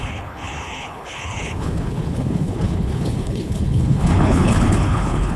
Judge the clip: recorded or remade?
remade